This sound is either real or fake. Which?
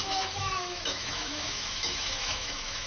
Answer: fake